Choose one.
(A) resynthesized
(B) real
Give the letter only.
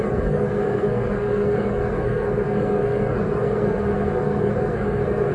A